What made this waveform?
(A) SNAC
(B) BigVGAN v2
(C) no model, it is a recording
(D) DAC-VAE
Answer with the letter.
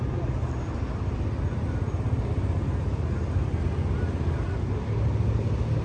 C